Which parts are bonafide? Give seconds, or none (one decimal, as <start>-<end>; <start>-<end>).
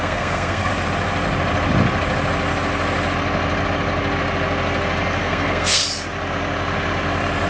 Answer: 0.7-5.2; 5.8-7.5